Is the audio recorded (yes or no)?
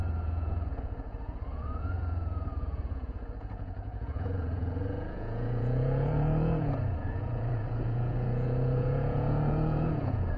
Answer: no